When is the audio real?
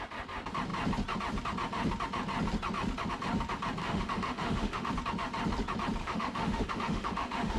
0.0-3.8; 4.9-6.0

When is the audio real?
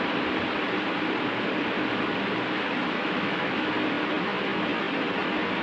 0.0-2.8; 3.7-5.6